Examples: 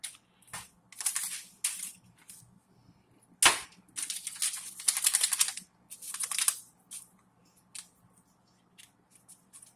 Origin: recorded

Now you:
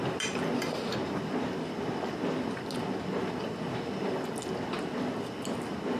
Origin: recorded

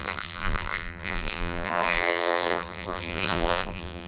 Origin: remade